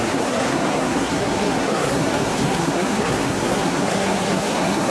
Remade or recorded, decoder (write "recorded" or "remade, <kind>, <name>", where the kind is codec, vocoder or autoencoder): remade, codec, SNAC